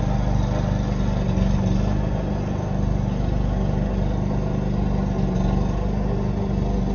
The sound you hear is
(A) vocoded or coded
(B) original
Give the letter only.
B